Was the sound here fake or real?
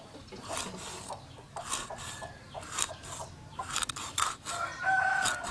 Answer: real